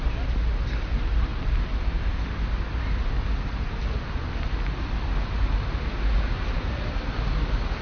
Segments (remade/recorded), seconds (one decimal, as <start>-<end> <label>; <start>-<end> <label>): 0.0-7.8 recorded